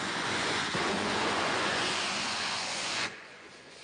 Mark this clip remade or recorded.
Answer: remade